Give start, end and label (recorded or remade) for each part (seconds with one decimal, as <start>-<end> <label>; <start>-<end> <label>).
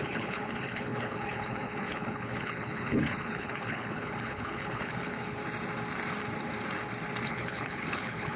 0.0-5.4 remade; 5.4-7.3 recorded; 7.3-8.4 remade